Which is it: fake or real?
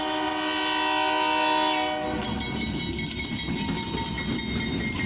real